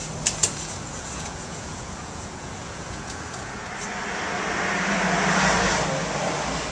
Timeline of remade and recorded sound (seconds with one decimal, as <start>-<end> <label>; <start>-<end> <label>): 0.0-0.4 recorded; 0.4-3.7 remade; 3.7-6.7 recorded